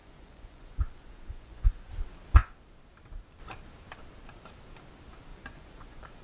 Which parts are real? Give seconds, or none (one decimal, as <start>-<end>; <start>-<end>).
1.9-5.3